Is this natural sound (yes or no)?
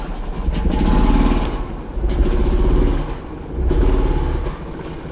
yes